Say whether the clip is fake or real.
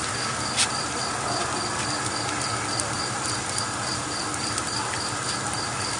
real